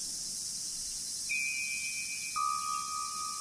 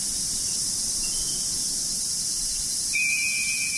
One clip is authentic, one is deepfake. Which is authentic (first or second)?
first